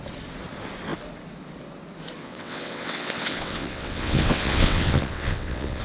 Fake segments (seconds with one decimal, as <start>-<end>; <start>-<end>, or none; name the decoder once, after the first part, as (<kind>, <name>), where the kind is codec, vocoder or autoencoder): 2.2-5.8 (vocoder, WaveNeXt)